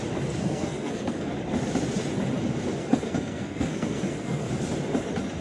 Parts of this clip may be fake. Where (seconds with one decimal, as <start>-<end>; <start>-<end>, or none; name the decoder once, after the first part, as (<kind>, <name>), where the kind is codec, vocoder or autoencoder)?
0.4-1.3 (codec, SNAC); 2.8-4.5